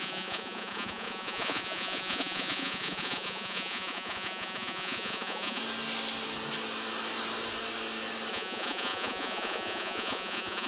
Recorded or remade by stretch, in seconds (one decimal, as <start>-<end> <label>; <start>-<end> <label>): 0.0-5.6 remade; 5.6-8.3 recorded; 8.3-10.7 remade